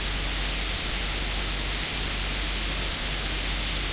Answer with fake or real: real